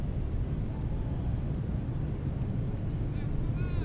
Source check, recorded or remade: recorded